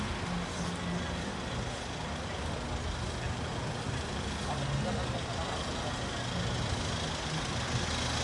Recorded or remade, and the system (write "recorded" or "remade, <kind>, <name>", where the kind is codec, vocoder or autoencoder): recorded